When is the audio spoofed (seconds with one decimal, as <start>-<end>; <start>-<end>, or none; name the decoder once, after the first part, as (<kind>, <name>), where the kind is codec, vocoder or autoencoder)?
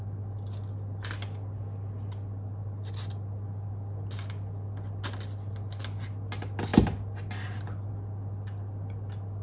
none